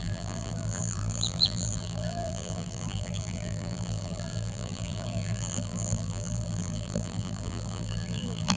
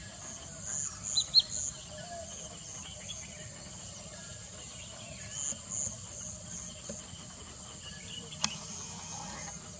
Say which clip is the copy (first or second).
first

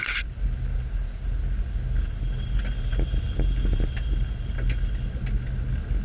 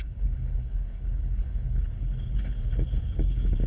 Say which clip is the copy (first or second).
second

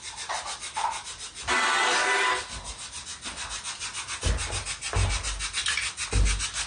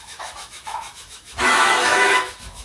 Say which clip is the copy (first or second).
second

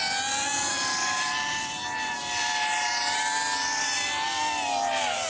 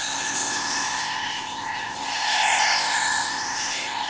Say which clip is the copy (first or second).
second